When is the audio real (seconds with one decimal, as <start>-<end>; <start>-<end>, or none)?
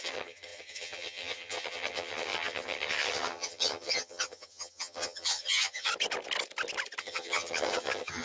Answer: 5.9-7.0